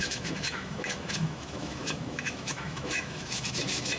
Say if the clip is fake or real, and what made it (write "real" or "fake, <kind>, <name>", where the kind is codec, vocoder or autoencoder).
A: fake, autoencoder, DAC-VAE